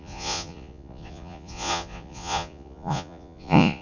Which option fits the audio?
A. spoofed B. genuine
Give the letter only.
A